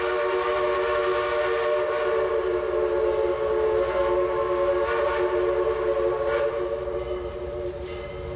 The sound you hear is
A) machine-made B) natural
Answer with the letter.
B